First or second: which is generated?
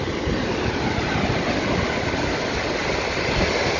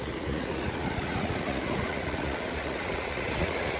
second